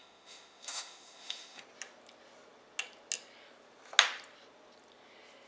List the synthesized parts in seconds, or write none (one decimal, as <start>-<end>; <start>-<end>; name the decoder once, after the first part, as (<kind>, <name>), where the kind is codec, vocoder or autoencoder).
0.0-1.6 (autoencoder, DAC-VAE)